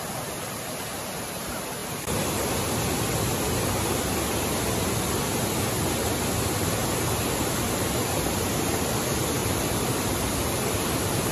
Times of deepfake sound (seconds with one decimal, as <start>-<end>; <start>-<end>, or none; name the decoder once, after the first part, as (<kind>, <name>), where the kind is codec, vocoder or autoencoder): 1.8-2.7 (vocoder, BigVGAN v2); 9.4-11.3